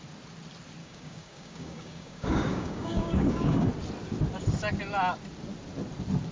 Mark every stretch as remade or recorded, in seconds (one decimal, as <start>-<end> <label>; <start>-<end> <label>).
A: 0.0-0.8 recorded; 0.8-3.7 remade; 3.7-6.3 recorded